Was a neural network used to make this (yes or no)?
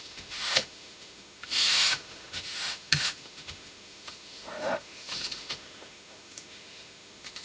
yes